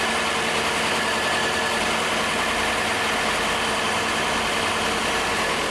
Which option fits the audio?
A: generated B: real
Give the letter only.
B